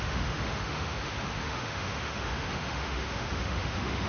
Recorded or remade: remade